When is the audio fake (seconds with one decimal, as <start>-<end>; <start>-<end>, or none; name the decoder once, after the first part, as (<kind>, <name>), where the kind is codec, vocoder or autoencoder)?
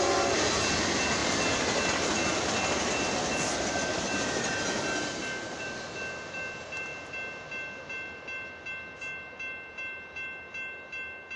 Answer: none